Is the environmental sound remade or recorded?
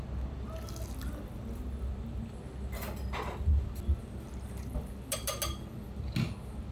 recorded